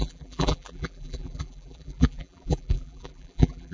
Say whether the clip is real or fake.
fake